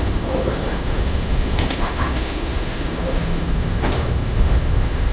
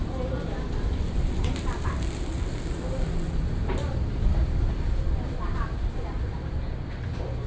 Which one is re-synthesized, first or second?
first